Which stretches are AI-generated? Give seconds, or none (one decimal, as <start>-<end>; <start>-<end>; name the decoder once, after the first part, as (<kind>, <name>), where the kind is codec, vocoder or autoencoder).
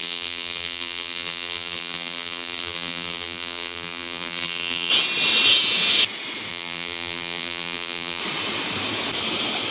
0.0-4.9 (vocoder, BigVGAN v2); 6.5-8.2